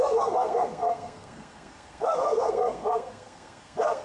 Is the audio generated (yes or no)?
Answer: yes